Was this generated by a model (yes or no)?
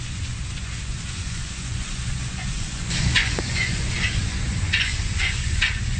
yes